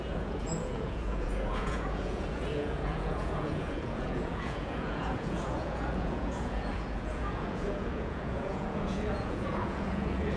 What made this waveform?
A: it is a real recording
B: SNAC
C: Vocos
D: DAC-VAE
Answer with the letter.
C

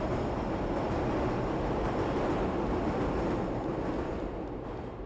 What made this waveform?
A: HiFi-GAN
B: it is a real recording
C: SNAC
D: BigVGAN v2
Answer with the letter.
B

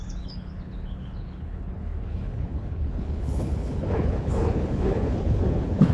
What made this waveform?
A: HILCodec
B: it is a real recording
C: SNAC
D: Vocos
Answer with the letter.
A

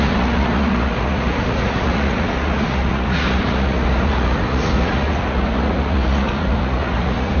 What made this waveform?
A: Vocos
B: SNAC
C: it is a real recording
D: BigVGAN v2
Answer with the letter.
A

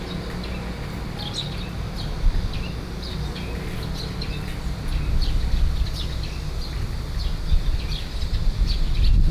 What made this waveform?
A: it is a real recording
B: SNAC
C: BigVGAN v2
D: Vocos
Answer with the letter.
A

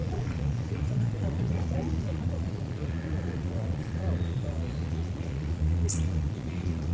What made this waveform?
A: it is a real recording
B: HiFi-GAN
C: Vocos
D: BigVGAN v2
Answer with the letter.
C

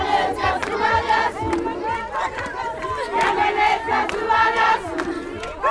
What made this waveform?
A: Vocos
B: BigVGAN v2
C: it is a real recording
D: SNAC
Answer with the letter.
C